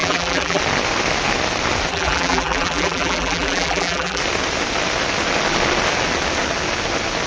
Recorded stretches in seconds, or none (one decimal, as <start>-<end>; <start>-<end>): 0.6-1.9; 4.2-7.3